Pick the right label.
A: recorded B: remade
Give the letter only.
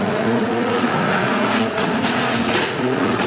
B